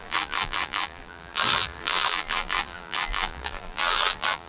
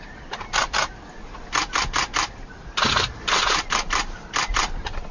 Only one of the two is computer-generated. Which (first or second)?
first